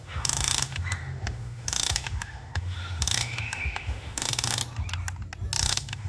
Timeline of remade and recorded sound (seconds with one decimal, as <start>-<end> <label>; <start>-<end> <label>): 0.0-4.6 remade; 4.6-5.6 recorded; 5.6-6.1 remade